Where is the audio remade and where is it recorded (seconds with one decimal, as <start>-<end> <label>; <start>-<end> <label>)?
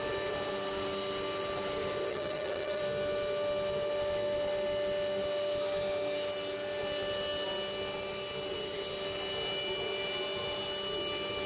0.0-2.1 recorded; 2.1-2.8 remade; 2.8-11.5 recorded